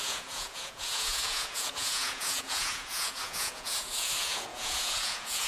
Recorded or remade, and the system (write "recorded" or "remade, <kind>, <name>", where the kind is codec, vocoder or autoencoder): remade, vocoder, Vocos